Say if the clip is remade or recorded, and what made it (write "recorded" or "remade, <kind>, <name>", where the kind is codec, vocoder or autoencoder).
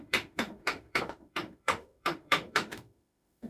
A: remade, autoencoder, DAC-VAE